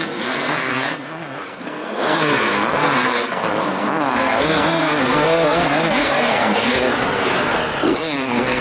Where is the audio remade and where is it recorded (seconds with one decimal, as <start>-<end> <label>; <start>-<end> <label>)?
0.0-8.6 remade